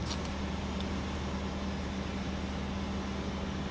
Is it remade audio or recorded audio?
recorded